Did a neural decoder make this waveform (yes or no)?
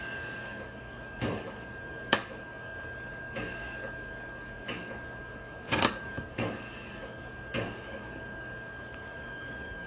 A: yes